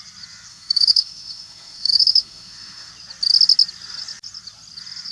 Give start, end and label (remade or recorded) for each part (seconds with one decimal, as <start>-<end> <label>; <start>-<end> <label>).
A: 0.0-0.5 recorded; 0.5-2.9 remade; 2.9-5.1 recorded